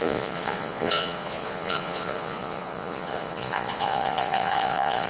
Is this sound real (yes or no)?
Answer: no